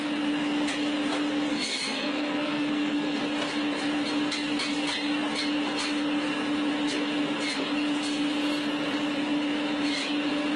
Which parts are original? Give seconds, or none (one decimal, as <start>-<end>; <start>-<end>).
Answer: 0.0-1.5; 3.2-10.6